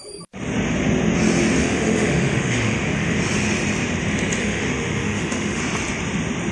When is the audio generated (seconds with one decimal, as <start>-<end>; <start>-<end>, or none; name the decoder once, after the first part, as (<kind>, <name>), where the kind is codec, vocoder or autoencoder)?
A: 1.6-3.2 (autoencoder, DAC-VAE); 4.4-5.6